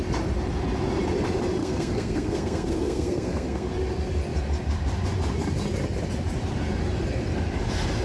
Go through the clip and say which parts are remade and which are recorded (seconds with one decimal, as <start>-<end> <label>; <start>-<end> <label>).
0.0-1.6 recorded; 1.6-3.7 remade; 3.7-8.0 recorded